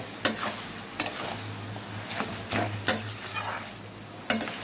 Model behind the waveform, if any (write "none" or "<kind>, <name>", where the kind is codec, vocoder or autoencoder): none